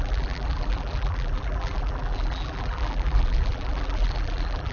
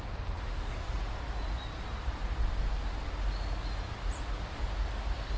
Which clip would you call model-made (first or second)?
first